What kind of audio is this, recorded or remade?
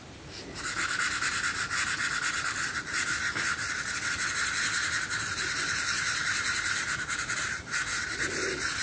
recorded